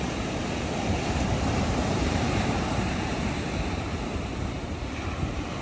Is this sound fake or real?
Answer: fake